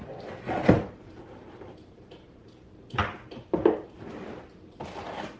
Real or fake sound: fake